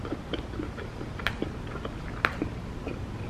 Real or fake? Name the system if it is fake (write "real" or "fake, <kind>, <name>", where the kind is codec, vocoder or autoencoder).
real